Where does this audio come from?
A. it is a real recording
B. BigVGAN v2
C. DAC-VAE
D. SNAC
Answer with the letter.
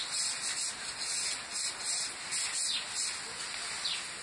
A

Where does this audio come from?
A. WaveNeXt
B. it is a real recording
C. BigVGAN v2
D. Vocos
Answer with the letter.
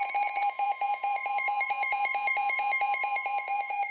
D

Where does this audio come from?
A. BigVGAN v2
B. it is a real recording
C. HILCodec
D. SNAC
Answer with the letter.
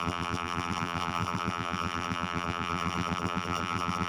A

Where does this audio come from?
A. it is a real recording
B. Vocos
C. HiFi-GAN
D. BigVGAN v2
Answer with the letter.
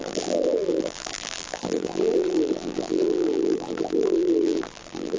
D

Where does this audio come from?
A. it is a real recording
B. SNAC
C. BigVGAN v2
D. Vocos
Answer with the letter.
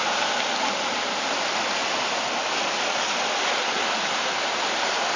A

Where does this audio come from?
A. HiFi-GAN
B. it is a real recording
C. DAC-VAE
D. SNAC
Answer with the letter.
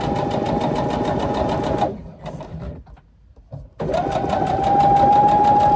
B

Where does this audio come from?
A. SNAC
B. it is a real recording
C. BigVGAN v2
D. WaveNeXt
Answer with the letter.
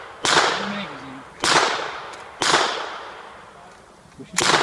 B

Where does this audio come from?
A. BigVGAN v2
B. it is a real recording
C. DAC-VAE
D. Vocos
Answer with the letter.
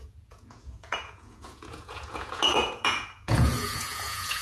D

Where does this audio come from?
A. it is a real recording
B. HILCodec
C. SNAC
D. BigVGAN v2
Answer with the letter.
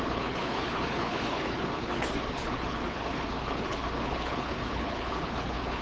B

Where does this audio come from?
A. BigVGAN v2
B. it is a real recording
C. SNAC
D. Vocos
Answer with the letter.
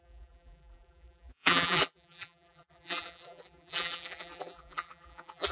A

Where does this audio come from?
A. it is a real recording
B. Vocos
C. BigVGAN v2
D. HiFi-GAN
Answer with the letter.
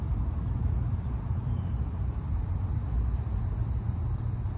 A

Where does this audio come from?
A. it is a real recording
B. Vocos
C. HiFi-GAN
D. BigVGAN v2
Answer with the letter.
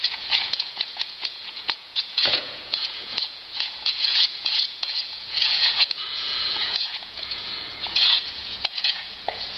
B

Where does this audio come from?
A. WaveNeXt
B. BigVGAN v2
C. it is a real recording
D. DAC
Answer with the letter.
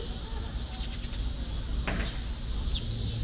C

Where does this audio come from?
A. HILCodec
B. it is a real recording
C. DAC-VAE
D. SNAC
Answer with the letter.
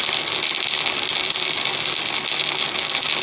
B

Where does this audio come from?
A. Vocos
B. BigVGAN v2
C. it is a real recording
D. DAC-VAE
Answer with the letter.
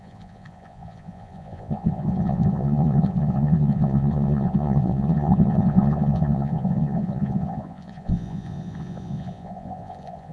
A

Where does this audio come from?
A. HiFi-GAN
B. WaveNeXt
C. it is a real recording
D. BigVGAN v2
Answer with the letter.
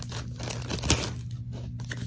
C